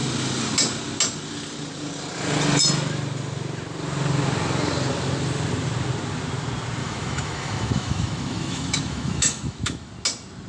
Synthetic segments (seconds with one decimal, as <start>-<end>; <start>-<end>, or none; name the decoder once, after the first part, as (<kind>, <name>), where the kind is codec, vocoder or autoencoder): 6.8-9.9 (autoencoder, DAC-VAE)